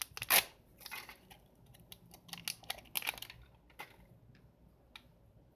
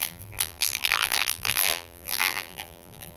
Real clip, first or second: first